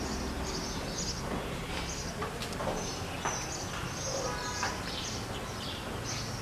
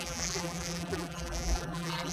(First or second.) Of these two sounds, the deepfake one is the second